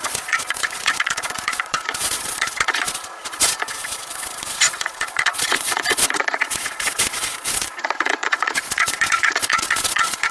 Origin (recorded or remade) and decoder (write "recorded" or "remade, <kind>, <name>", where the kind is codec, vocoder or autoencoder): remade, vocoder, Vocos